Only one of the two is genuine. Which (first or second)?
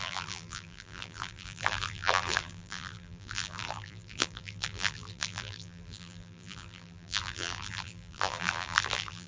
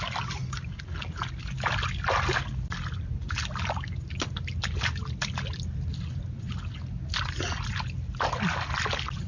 second